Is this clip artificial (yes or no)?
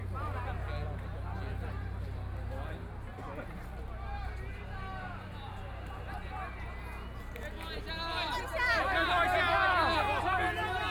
no